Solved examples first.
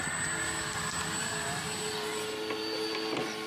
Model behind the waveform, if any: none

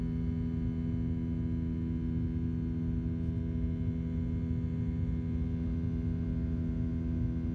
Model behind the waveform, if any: none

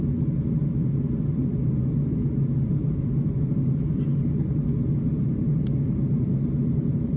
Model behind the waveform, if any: none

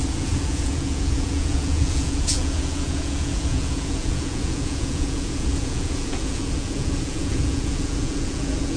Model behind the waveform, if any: vocoder, Vocos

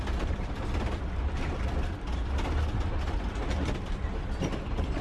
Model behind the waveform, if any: none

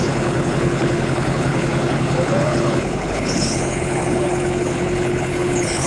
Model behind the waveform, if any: codec, HILCodec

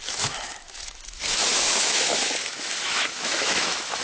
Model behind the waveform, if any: autoencoder, DAC-VAE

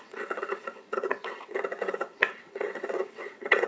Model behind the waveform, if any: vocoder, WaveNeXt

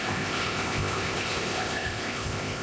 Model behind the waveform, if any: codec, ZipCodec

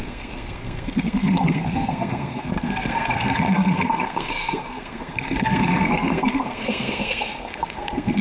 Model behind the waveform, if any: codec, SNAC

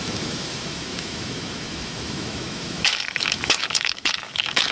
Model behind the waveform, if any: autoencoder, DAC-VAE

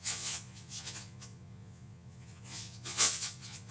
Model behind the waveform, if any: vocoder, Vocos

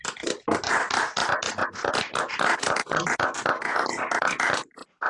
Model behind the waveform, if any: none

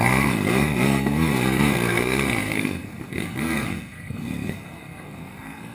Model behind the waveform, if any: codec, SNAC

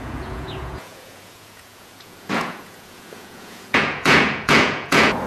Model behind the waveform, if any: vocoder, Vocos